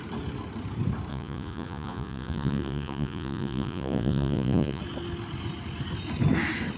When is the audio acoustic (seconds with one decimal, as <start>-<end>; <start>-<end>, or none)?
0.0-1.1; 4.8-6.8